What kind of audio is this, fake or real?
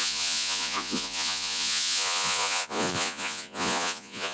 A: fake